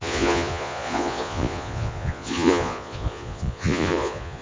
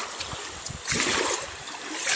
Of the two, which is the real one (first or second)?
second